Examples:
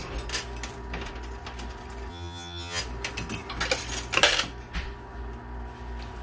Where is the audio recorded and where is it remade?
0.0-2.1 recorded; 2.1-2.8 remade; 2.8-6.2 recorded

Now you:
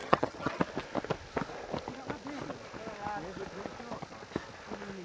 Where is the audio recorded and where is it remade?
0.0-0.6 remade; 0.6-5.0 recorded

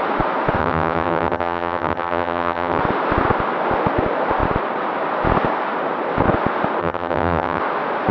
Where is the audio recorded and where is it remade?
0.0-0.6 recorded; 0.6-2.8 remade; 2.8-6.8 recorded; 6.8-7.6 remade; 7.6-8.1 recorded

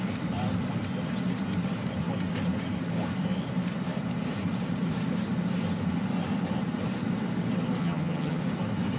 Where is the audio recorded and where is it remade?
0.0-7.8 recorded; 7.8-8.4 remade; 8.4-9.0 recorded

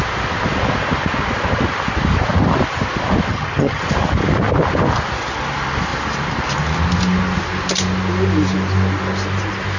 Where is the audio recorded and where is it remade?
0.0-3.3 recorded; 3.3-3.8 remade; 3.8-9.8 recorded

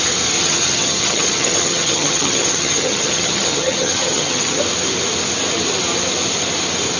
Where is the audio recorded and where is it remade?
0.0-0.4 recorded; 0.4-4.6 remade; 4.6-7.0 recorded

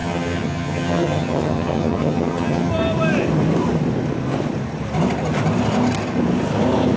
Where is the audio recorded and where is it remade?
0.0-2.7 remade; 2.7-7.0 recorded

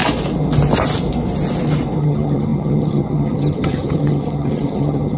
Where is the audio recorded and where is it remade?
0.0-2.0 recorded; 2.0-5.2 remade